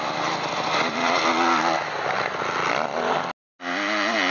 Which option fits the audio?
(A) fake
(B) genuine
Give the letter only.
B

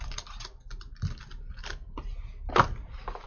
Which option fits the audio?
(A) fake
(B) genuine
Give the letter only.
B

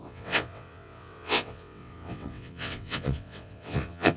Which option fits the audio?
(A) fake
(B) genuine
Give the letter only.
A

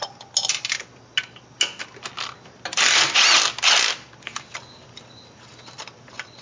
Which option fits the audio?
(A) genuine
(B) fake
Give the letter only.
A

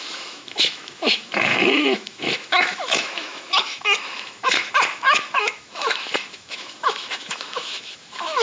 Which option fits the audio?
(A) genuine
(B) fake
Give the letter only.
B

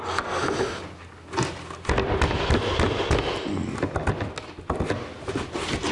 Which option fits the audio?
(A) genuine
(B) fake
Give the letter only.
A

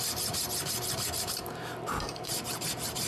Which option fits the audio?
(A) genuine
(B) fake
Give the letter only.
B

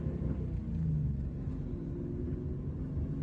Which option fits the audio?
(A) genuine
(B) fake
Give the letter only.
A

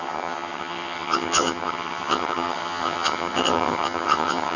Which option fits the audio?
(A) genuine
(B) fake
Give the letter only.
B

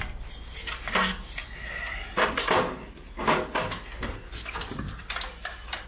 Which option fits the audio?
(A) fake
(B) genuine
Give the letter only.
B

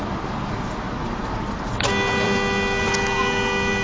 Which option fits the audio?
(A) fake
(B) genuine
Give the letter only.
B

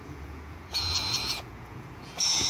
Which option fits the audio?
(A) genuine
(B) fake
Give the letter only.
B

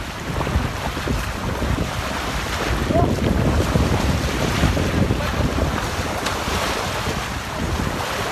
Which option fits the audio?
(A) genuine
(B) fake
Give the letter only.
A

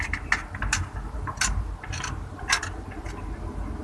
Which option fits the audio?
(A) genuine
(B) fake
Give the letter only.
A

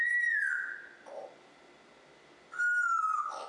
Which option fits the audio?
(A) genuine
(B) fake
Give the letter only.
A